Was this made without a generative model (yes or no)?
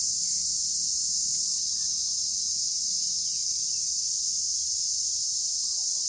yes